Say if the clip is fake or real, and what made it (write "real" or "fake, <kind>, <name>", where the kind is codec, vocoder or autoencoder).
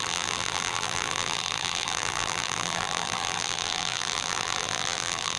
fake, vocoder, BigVGAN v2